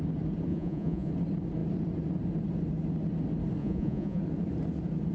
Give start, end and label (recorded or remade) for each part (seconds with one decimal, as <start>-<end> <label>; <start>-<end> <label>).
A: 0.0-0.5 recorded; 0.5-1.1 remade; 1.1-3.6 recorded; 3.6-4.2 remade; 4.2-5.1 recorded